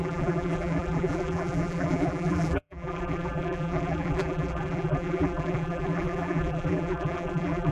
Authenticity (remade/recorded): remade